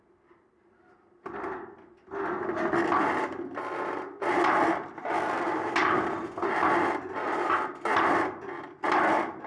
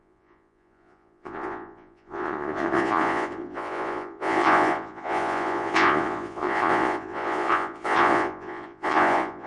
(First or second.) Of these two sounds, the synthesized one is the second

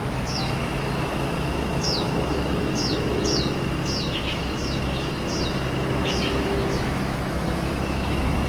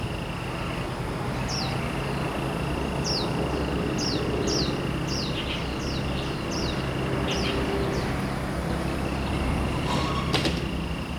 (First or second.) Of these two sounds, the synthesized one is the first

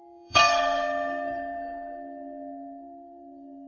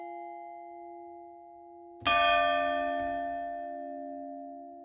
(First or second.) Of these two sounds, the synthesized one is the first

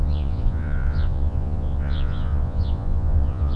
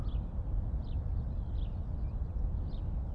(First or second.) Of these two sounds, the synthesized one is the first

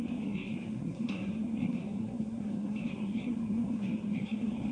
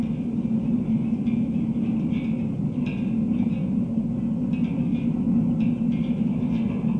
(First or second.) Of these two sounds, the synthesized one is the first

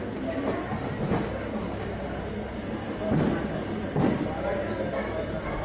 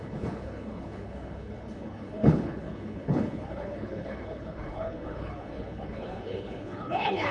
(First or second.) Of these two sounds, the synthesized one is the second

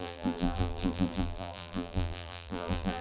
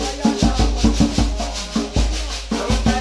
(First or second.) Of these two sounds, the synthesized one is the first